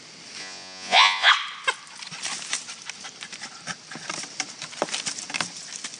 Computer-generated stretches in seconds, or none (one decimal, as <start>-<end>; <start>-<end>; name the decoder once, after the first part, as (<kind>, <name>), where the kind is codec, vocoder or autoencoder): 0.4-1.3 (vocoder, Vocos)